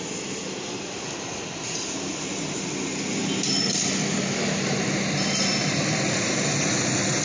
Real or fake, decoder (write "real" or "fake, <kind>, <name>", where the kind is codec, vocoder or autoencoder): real